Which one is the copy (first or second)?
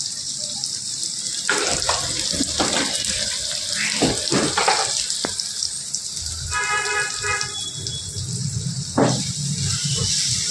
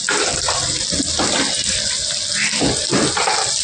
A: first